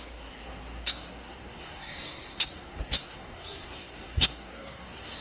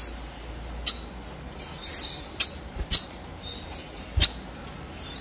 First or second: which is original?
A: second